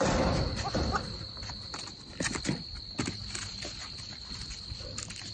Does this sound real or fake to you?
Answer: real